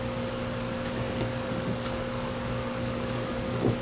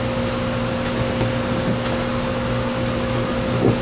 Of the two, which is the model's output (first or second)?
first